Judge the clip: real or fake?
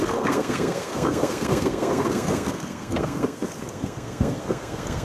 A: fake